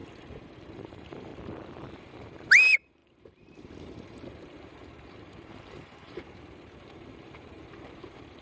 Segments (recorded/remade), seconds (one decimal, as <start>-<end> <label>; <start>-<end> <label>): 0.0-0.7 recorded; 0.7-1.3 remade; 1.3-2.0 recorded; 2.0-8.4 remade